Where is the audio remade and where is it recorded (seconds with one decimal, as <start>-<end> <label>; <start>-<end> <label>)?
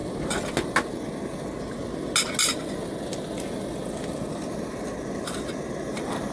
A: 0.0-6.3 recorded